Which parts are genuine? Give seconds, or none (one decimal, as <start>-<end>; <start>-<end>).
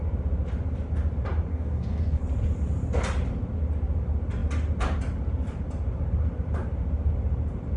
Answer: 0.0-1.5; 2.2-7.8